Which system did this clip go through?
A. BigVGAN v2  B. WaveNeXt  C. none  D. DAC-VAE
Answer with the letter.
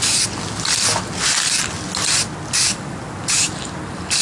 C